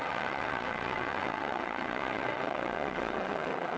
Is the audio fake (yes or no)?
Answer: yes